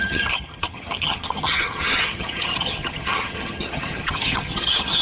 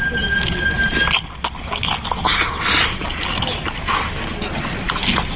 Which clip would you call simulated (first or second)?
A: first